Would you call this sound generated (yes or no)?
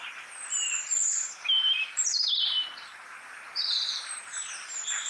yes